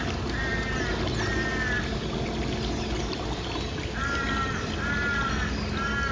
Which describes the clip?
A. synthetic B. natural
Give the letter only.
B